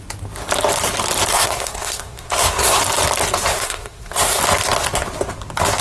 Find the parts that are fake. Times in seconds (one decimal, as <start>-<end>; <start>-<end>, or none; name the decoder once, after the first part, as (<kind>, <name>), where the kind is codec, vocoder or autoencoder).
1.3-2.8 (codec, SNAC); 3.5-4.4